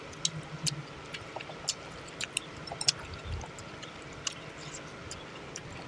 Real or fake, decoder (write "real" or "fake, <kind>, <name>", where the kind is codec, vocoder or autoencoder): real